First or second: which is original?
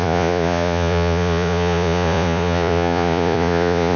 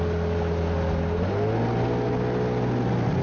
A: second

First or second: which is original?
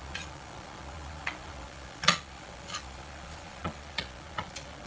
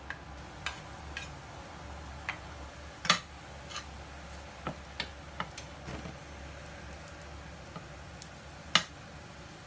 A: second